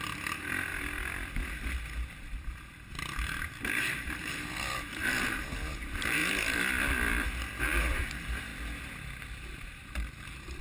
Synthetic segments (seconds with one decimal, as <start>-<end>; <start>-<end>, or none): 0.0-0.7; 3.6-6.2; 7.6-8.5; 9.4-10.6